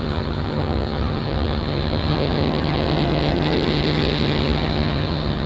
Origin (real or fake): fake